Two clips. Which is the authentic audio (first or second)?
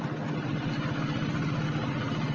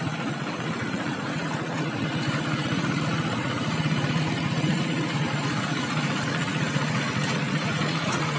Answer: first